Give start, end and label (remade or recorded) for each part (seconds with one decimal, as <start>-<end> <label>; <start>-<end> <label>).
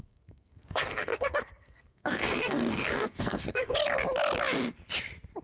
0.0-3.8 remade; 3.8-5.4 recorded